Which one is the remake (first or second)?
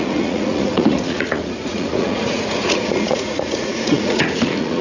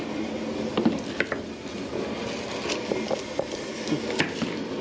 first